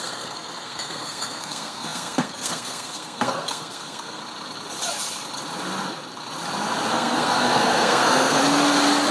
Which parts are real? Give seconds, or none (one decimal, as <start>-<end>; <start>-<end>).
4.2-6.9; 8.4-9.1